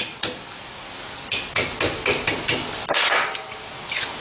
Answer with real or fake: real